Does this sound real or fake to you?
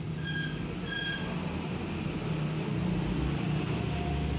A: real